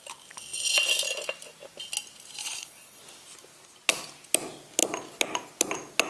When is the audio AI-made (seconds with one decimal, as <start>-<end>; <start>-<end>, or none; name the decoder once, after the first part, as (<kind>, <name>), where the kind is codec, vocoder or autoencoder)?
2.4-3.0 (codec, HILCodec)